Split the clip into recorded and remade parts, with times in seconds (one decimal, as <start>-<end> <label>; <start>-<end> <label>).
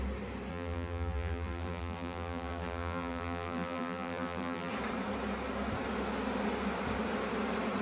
0.0-0.5 recorded; 0.5-4.7 remade; 4.7-7.8 recorded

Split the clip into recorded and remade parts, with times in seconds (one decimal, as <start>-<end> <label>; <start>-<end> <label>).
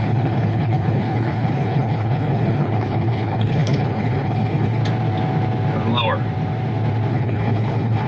0.0-4.8 remade; 4.8-7.1 recorded; 7.1-8.1 remade